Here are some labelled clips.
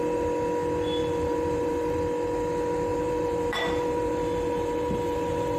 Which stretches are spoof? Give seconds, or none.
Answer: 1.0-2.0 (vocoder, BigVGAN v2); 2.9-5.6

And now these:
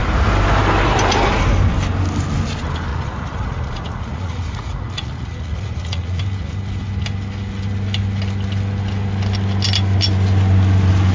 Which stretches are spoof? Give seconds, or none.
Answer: 2.9-6.2 (vocoder, Vocos)